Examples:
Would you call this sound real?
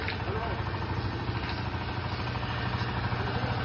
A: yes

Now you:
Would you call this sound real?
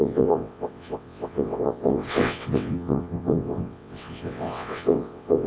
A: no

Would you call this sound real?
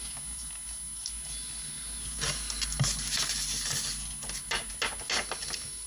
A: yes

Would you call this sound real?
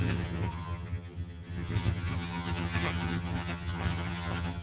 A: no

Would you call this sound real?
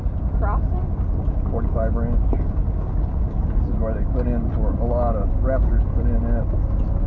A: yes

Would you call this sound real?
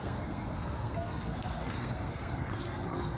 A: no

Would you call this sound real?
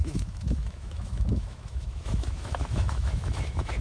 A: no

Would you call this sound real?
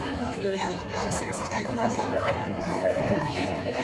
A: no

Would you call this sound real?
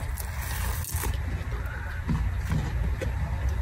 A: yes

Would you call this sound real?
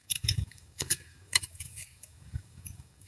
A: no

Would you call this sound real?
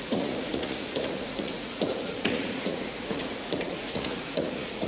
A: no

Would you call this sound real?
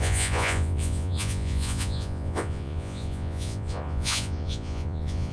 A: no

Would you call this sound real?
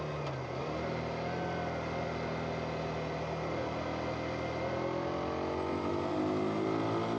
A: yes